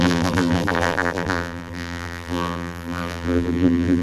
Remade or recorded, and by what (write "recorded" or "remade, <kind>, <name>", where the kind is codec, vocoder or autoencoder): remade, vocoder, BigVGAN v2